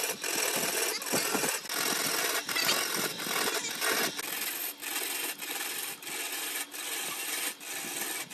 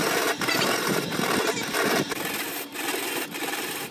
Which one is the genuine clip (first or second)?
first